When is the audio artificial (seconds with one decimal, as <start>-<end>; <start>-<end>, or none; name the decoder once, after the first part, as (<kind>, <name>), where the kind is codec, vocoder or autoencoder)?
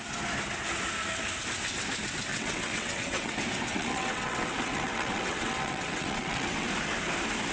2.3-3.3 (vocoder, WaveNeXt); 3.7-6.7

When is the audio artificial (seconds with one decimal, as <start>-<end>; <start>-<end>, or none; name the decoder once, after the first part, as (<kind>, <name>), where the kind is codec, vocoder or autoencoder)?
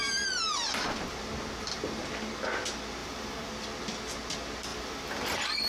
3.0-3.5 (vocoder, BigVGAN v2); 4.7-5.7